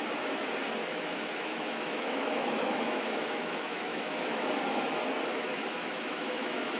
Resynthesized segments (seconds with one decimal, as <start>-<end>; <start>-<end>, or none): 0.9-4.5; 5.3-6.8